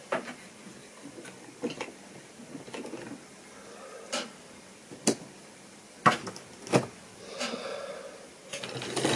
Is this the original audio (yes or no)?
yes